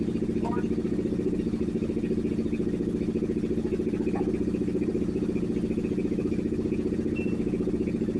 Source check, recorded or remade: recorded